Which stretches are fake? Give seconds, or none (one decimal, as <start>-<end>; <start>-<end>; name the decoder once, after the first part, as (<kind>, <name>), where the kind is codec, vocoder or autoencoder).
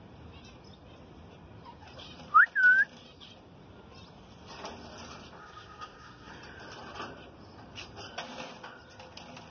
5.4-6.3 (codec, SNAC)